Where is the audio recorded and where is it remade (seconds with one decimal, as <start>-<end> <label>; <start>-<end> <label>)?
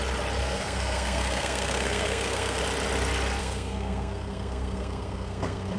0.0-0.4 recorded; 0.4-2.6 remade; 2.6-3.4 recorded; 3.4-5.8 remade